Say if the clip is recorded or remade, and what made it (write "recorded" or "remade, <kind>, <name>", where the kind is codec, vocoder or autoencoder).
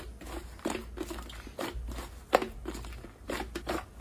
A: recorded